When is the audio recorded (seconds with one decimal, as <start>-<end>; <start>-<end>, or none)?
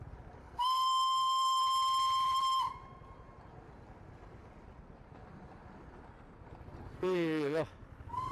0.0-0.4; 1.6-6.9; 7.6-8.3